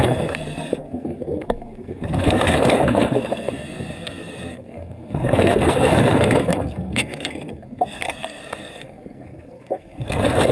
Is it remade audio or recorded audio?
remade